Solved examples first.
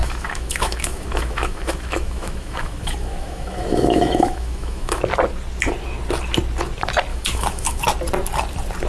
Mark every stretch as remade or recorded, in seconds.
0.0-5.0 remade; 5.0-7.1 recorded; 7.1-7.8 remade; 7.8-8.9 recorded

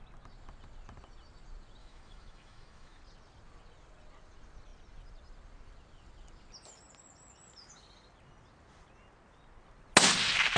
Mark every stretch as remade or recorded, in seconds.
0.0-1.8 recorded; 1.8-3.0 remade; 3.0-10.6 recorded

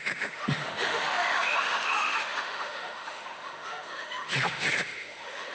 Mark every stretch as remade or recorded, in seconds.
0.0-5.5 remade

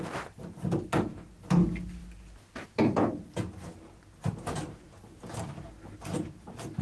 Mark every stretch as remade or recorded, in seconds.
0.0-6.8 recorded

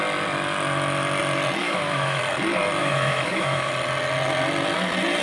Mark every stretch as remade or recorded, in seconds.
0.0-1.6 recorded; 1.6-2.2 remade; 2.2-2.8 recorded; 2.8-3.7 remade; 3.7-5.2 recorded

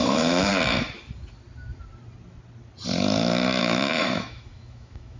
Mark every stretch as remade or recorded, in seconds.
0.0-0.5 remade; 0.5-3.6 recorded; 3.6-5.2 remade

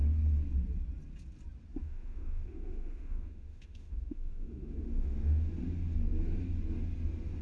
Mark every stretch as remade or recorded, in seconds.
0.0-1.8 recorded; 1.8-5.5 remade; 5.5-7.4 recorded

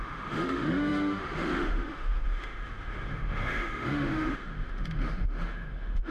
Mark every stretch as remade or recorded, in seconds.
0.0-6.1 remade